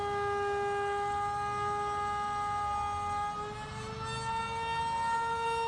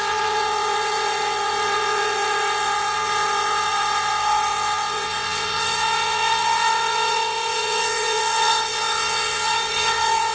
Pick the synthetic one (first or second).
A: second